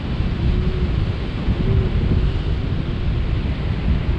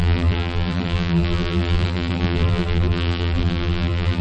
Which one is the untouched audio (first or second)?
first